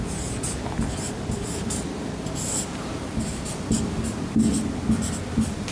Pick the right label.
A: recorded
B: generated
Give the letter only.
A